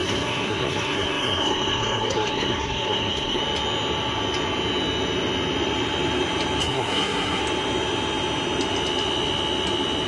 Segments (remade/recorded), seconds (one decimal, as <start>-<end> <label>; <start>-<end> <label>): 0.0-3.4 remade; 3.4-6.6 recorded; 6.6-7.4 remade; 7.4-10.1 recorded